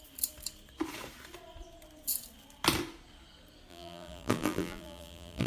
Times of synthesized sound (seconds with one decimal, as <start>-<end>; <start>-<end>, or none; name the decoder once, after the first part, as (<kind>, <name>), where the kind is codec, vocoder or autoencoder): 3.7-5.5 (vocoder, BigVGAN v2)